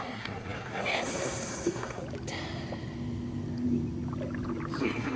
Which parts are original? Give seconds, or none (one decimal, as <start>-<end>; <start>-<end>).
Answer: 2.0-4.8